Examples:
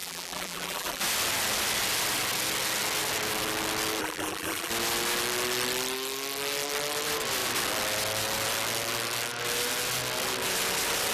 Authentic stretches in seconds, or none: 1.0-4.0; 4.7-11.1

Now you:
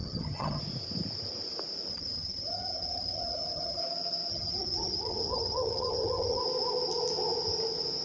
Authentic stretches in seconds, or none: 0.6-1.9; 3.8-4.3; 6.4-8.0

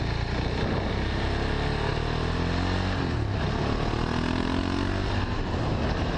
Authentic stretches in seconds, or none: 0.0-6.2

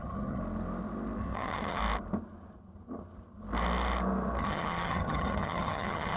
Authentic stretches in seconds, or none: 0.4-1.2; 1.8-4.4